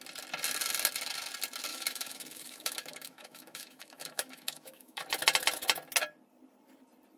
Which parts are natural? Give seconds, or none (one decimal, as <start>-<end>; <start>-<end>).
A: 0.0-1.7; 5.0-7.2